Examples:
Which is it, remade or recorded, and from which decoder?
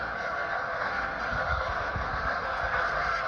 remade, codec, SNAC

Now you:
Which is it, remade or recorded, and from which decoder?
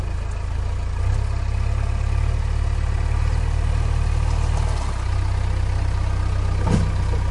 recorded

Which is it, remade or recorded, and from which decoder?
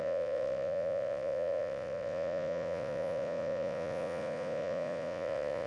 remade, vocoder, Vocos